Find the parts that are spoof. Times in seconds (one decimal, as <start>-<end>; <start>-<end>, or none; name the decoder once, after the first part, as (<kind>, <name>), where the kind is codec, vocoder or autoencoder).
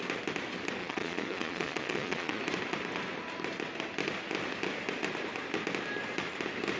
0.8-2.4 (vocoder, Vocos)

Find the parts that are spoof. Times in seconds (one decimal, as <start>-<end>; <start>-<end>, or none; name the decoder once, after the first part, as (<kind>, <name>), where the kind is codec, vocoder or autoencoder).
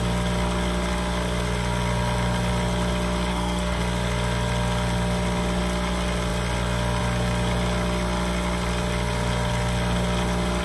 3.3-3.8 (codec, SNAC)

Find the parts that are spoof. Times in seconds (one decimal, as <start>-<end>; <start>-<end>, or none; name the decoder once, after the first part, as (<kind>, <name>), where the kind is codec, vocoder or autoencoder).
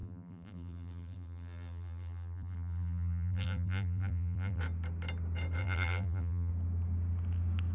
0.0-4.6 (vocoder, BigVGAN v2); 5.6-6.5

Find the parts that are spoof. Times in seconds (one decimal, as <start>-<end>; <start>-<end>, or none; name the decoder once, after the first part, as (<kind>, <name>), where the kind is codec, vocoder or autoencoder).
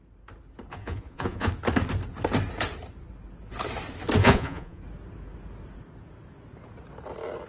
0.7-1.5 (vocoder, Vocos); 4.2-4.8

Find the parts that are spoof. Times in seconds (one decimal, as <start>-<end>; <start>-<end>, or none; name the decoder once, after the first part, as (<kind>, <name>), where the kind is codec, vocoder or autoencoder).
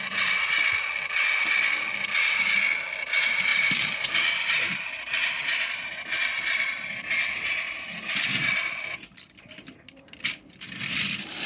3.5-8.7 (vocoder, BigVGAN v2)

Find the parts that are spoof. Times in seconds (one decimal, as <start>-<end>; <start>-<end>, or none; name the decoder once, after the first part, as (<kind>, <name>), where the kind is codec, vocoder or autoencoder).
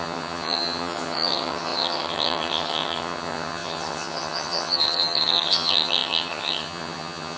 0.0-7.4 (vocoder, HiFi-GAN)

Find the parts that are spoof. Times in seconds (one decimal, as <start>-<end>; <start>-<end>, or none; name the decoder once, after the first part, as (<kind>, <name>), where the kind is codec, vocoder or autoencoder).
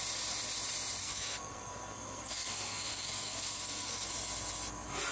1.0-4.1 (codec, SNAC)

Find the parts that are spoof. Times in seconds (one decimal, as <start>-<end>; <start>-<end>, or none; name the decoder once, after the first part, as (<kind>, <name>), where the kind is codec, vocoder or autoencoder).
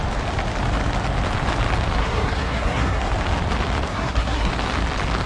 2.0-3.1 (codec, SNAC); 3.9-4.5